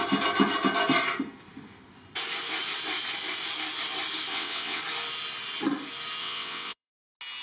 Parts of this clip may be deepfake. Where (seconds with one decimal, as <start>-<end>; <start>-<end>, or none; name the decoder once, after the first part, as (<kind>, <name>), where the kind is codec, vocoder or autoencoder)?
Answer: 4.3-4.8 (vocoder, WaveNeXt); 6.2-6.9